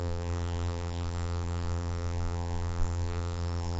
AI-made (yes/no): yes